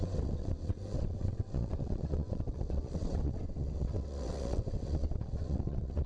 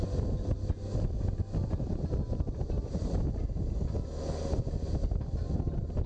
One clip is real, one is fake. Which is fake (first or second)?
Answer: first